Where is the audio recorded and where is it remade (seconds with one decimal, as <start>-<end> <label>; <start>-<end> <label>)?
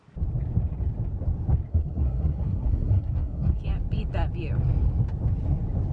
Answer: 0.0-1.7 recorded; 1.7-3.6 remade; 3.6-5.9 recorded